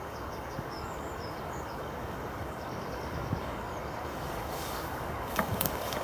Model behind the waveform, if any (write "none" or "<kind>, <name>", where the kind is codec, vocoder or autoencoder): codec, DAC